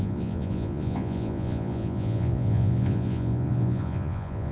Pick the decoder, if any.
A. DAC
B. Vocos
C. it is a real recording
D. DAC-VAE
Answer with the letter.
B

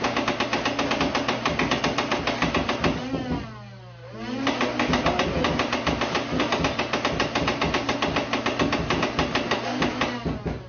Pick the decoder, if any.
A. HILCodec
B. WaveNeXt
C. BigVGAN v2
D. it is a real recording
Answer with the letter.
D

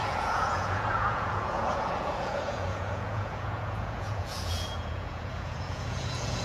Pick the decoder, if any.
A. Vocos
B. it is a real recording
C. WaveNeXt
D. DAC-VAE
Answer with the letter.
A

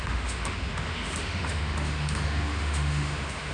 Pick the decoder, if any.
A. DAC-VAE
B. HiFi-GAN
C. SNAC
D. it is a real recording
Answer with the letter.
A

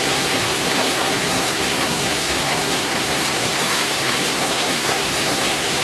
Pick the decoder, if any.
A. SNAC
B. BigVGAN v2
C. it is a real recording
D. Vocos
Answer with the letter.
A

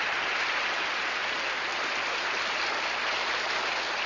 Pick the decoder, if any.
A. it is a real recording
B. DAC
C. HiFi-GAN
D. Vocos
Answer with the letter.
A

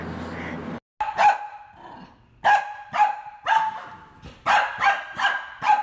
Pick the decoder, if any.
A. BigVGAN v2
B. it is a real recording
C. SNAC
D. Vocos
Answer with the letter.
B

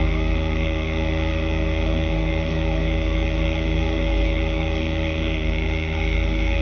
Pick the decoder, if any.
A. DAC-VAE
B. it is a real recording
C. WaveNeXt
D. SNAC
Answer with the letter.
D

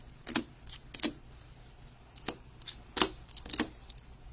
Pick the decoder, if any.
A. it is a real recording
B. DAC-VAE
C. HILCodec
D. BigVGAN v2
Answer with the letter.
A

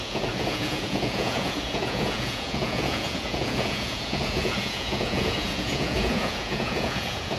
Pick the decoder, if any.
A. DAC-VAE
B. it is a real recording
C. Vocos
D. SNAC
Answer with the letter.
C